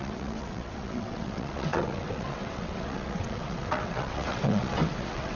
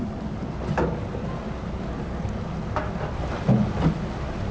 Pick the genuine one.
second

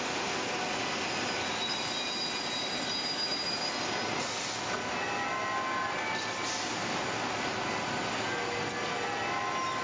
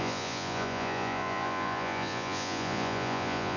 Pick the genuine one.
first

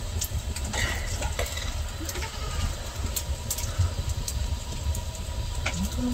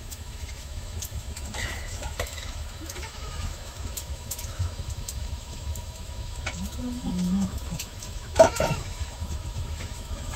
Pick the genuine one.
first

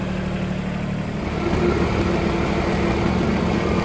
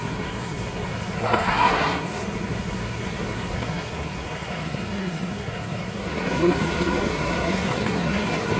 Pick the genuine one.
first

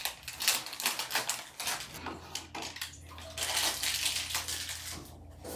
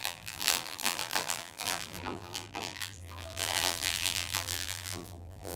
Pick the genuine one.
first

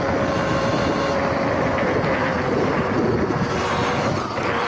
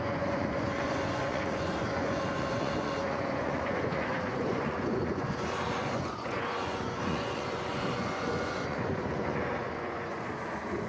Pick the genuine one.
first